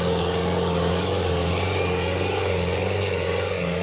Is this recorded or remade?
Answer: remade